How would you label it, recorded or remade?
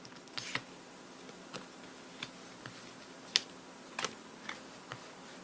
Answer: recorded